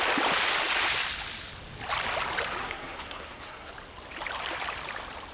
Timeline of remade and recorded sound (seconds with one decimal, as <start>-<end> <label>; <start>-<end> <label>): 0.0-2.6 recorded; 2.6-3.7 remade; 3.7-5.3 recorded